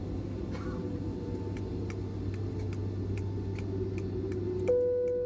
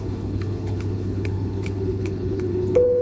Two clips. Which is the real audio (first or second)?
first